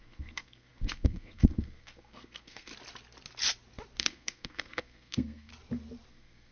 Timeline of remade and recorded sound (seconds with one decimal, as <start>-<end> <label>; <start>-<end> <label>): 0.0-2.7 remade; 2.7-4.0 recorded; 4.0-5.5 remade; 5.5-6.1 recorded; 6.1-6.5 remade